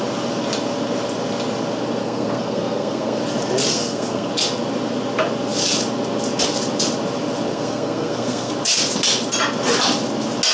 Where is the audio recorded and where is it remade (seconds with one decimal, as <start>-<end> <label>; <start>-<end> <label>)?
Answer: 0.0-2.0 recorded; 2.0-3.2 remade; 3.2-3.7 recorded; 3.7-4.3 remade; 4.3-7.5 recorded; 7.5-8.5 remade; 8.5-10.5 recorded